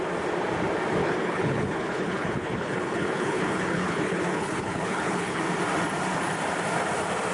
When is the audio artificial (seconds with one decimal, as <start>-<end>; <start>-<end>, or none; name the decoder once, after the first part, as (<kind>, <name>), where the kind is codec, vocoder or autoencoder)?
1.0-5.4 (codec, HILCodec)

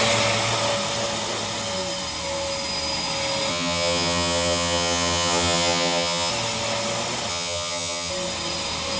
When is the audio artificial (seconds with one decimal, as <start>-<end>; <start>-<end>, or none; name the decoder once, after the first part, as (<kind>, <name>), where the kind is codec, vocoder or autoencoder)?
3.5-6.3 (vocoder, HiFi-GAN); 7.3-8.1

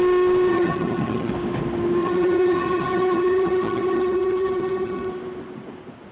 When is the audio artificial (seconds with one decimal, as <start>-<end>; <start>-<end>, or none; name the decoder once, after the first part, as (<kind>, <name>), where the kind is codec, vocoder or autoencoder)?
0.5-1.3 (vocoder, HiFi-GAN); 2.0-5.1

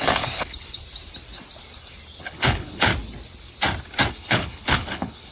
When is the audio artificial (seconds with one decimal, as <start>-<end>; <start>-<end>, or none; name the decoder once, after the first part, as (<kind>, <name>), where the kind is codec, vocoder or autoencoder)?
0.0-0.8 (codec, HILCodec); 2.2-2.9; 4.1-5.3

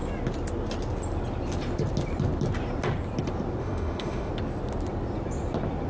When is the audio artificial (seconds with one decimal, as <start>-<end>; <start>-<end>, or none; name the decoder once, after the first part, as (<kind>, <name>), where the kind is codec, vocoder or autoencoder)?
3.6-4.3 (autoencoder, DAC-VAE)

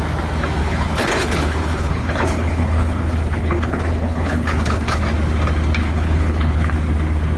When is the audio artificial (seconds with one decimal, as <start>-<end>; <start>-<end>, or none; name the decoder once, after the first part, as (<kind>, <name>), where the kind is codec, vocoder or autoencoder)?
0.6-5.0 (codec, HILCodec); 5.8-6.7

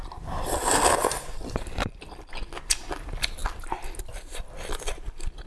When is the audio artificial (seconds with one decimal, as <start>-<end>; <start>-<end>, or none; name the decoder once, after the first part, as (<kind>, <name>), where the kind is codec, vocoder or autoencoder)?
none